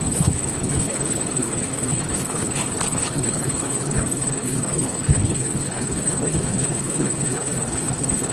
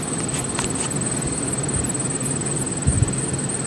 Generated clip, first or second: first